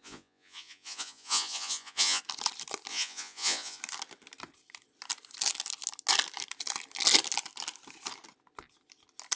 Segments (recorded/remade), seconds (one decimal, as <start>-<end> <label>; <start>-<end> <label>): 0.0-2.2 remade; 2.2-2.9 recorded; 2.9-3.8 remade; 3.8-9.4 recorded